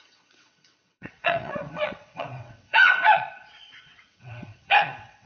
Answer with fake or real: fake